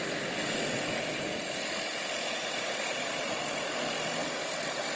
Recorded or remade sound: recorded